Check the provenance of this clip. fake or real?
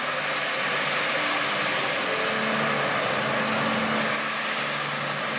real